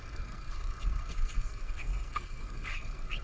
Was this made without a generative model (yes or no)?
no